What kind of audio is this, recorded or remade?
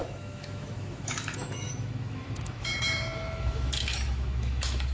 remade